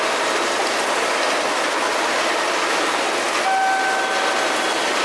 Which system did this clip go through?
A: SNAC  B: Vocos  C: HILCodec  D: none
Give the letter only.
D